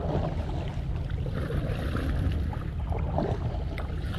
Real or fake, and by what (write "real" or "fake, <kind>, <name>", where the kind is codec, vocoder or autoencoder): real